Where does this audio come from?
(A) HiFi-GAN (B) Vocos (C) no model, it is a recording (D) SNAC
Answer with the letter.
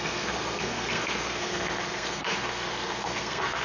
D